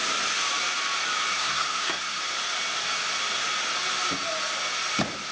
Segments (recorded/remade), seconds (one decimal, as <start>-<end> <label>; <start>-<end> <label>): 0.0-1.3 recorded; 1.3-2.2 remade; 2.2-5.3 recorded